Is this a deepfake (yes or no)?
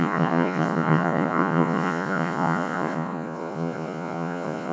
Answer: yes